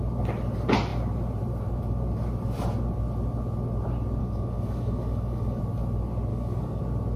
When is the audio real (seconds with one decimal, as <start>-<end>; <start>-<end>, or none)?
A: 0.0-4.2; 5.6-6.3; 6.8-7.2